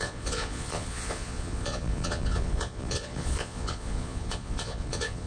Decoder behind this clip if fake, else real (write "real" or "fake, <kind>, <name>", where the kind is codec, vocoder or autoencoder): fake, vocoder, Vocos